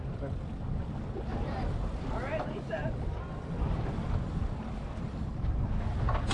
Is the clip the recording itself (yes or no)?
yes